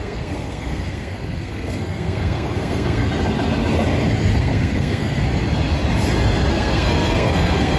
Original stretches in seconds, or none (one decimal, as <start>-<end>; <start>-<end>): 3.1-4.4; 5.2-6.5

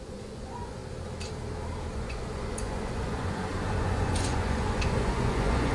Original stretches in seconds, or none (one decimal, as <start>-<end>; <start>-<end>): 0.8-1.9

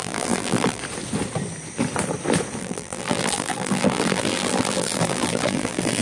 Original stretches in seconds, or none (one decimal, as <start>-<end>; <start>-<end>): 0.8-2.6

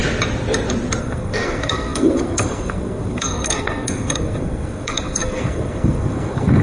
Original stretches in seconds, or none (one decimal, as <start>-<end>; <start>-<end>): 0.0-1.0

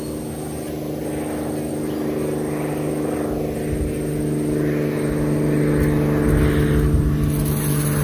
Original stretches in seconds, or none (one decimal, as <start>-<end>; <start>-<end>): 0.0-8.0

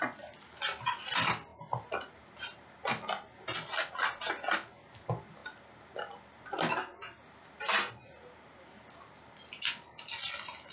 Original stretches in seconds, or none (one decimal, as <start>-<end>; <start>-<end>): 0.0-10.7

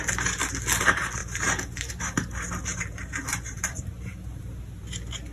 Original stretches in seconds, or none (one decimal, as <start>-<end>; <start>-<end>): 0.0-1.2; 1.9-2.7; 4.4-5.3

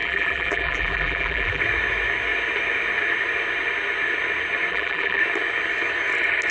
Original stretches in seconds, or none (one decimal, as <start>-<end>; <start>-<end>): 1.6-4.7; 5.2-6.5